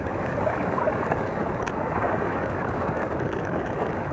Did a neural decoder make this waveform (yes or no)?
yes